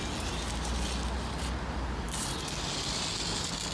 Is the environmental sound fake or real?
real